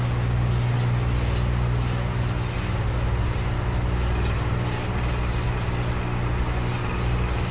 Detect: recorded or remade recorded